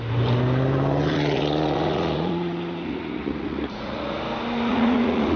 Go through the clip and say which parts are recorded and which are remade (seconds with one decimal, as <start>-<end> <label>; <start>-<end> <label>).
0.0-1.0 recorded; 1.0-4.2 remade; 4.2-4.7 recorded; 4.7-5.4 remade